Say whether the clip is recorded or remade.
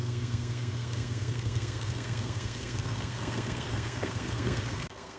remade